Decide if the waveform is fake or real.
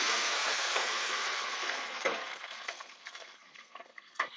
fake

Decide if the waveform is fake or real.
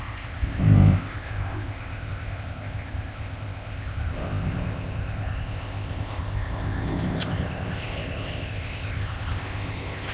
fake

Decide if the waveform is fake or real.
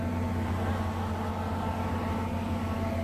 real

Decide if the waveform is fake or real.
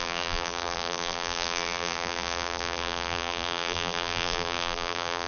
fake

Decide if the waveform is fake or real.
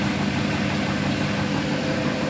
real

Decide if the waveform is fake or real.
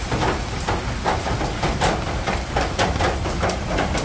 real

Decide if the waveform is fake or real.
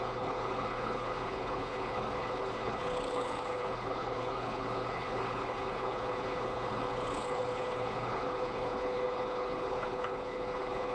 fake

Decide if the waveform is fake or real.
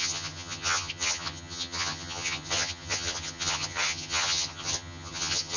fake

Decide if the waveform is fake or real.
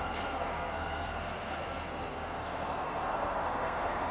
fake